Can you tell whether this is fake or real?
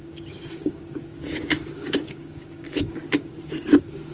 fake